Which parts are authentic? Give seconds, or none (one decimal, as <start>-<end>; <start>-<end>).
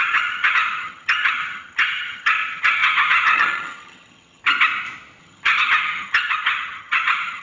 4.4-5.2